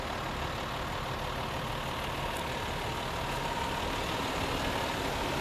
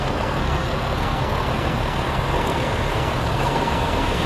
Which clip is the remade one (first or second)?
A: second